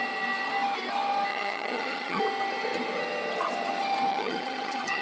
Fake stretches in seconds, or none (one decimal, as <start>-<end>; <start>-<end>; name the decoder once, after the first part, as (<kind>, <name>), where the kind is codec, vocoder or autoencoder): 1.3-2.2 (vocoder, HiFi-GAN); 4.1-5.0